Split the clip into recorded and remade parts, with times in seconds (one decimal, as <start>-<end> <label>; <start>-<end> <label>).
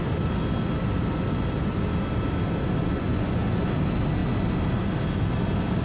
0.0-2.8 recorded; 2.8-3.7 remade; 3.7-5.8 recorded